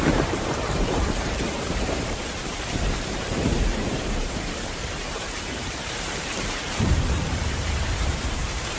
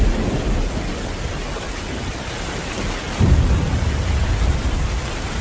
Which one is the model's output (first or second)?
first